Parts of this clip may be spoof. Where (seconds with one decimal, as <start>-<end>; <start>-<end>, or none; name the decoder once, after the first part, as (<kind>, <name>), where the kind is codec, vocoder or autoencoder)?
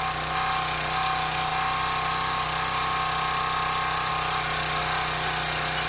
none